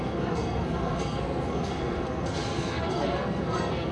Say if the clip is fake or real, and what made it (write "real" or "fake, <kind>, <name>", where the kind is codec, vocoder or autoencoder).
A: fake, codec, SNAC